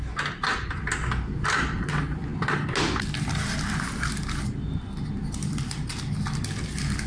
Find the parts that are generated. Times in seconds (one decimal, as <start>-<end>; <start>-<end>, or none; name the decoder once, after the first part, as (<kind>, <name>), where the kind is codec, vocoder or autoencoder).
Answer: none